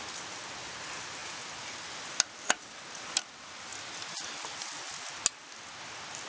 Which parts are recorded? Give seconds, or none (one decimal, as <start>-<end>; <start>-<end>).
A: 0.0-6.3